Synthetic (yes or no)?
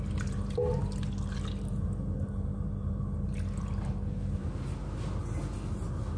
no